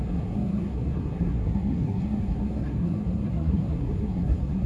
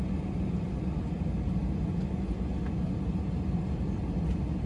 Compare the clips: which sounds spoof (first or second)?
first